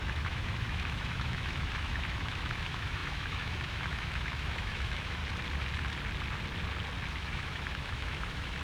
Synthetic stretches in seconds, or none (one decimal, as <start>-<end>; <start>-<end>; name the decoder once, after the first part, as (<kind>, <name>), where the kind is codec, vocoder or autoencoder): 0.0-5.2 (autoencoder, DAC-VAE); 7.1-8.6